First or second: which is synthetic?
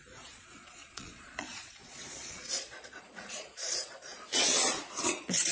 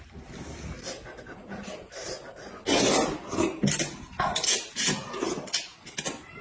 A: first